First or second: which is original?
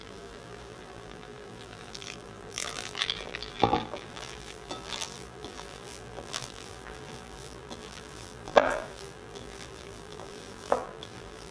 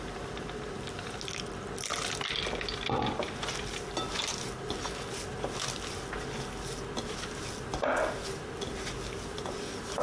second